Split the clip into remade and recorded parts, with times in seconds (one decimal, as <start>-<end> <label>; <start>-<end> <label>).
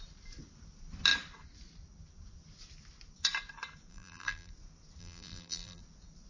0.0-3.9 recorded; 3.9-4.5 remade; 4.5-5.0 recorded; 5.0-5.8 remade; 5.8-6.3 recorded